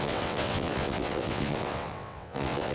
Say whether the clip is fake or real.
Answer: fake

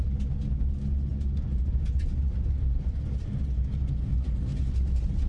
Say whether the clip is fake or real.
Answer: real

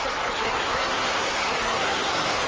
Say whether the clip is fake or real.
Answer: fake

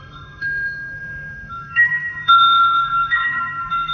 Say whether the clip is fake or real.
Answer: fake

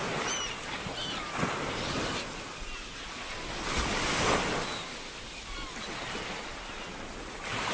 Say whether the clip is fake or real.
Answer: real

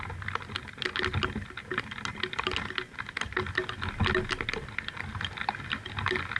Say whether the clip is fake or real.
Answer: real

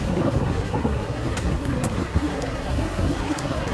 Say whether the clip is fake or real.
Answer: fake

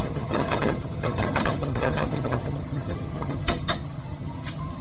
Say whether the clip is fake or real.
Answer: fake